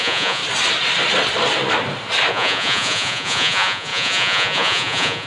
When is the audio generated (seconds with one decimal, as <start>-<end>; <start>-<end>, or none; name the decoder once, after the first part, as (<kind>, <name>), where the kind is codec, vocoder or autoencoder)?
0.0-0.4 (vocoder, Vocos); 2.3-5.3